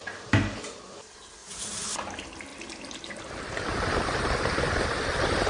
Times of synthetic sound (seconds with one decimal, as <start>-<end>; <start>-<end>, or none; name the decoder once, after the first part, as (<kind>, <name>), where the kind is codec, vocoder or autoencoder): 1.4-1.9 (vocoder, BigVGAN v2)